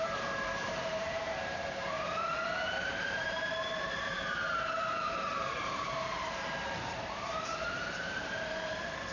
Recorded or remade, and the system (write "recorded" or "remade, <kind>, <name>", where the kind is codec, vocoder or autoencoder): remade, vocoder, BigVGAN v2